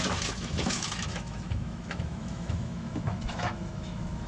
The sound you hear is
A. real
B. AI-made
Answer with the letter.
B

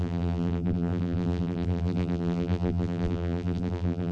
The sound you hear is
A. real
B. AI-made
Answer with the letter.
B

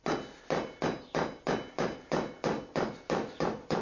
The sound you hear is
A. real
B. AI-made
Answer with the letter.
A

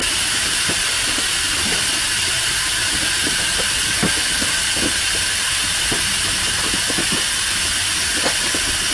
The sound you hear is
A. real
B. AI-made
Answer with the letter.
A